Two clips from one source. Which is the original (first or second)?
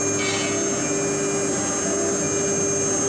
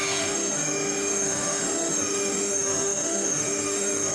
first